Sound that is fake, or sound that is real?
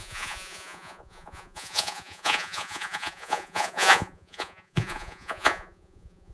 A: fake